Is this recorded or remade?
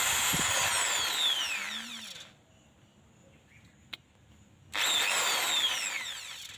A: recorded